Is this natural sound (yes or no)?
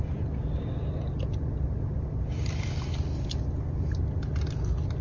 yes